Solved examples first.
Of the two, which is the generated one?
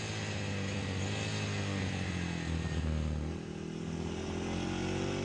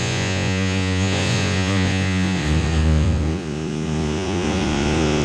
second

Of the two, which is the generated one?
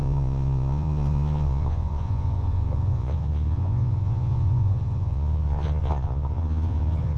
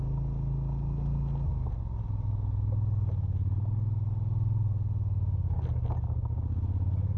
first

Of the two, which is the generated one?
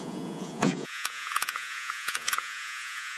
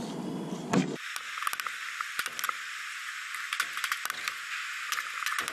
first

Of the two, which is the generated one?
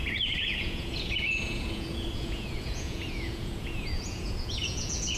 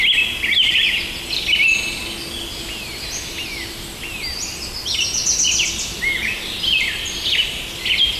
first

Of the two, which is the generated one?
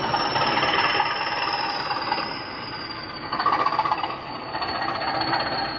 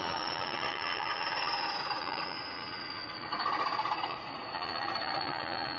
second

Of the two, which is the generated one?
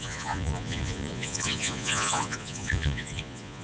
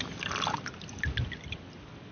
first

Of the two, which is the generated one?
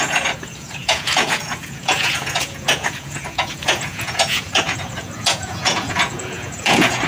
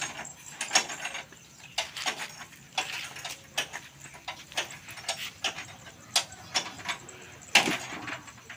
first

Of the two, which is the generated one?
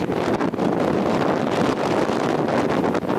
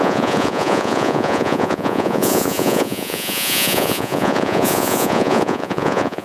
second